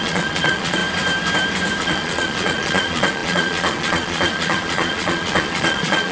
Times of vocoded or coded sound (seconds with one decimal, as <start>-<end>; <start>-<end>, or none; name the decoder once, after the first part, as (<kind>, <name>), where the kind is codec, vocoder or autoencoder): 0.0-0.8 (vocoder, Vocos); 1.8-6.1